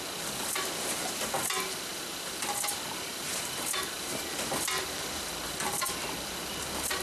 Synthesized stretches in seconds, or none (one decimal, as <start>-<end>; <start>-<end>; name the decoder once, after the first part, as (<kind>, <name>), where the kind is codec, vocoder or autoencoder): none